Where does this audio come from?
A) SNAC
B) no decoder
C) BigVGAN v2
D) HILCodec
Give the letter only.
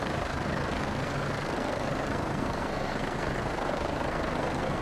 A